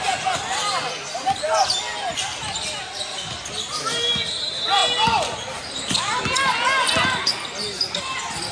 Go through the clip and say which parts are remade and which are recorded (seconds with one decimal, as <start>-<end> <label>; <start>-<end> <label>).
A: 0.0-2.1 recorded; 2.1-2.8 remade; 2.8-8.5 recorded